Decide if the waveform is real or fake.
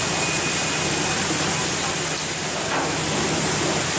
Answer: real